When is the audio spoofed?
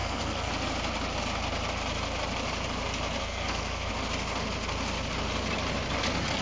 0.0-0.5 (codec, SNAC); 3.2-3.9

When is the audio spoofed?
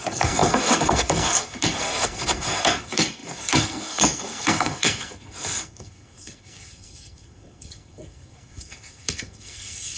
0.0-10.0 (codec, SNAC)